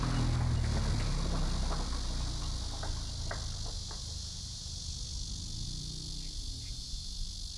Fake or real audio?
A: real